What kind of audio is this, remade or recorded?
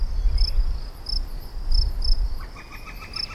recorded